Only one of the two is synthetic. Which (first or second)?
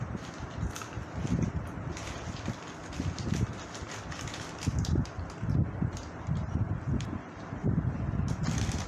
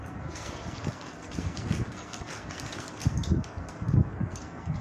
second